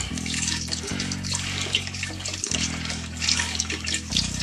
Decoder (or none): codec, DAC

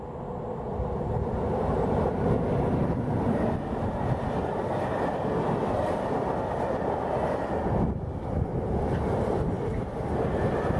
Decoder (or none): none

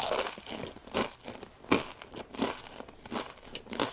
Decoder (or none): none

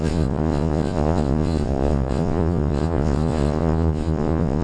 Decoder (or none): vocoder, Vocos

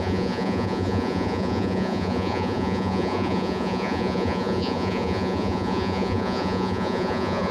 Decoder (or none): vocoder, Vocos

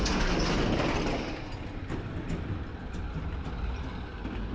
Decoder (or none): none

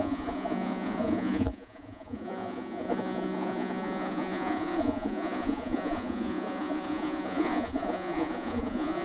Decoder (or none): vocoder, Vocos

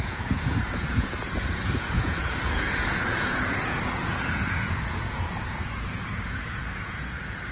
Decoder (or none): vocoder, Vocos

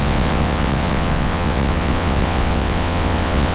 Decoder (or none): vocoder, WaveNeXt